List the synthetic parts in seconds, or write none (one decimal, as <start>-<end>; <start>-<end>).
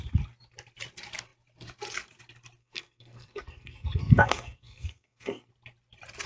2.6-5.5